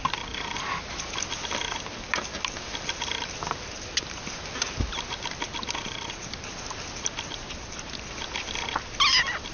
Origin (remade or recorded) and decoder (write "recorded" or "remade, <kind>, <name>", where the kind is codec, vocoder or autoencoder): recorded